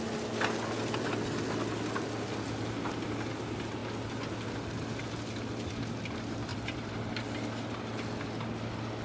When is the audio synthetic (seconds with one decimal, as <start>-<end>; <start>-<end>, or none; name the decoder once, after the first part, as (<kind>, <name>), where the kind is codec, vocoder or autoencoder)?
6.5-7.1 (vocoder, BigVGAN v2)